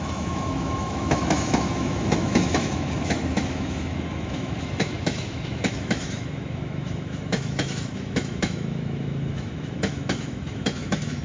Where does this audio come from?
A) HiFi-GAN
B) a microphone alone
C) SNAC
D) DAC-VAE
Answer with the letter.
D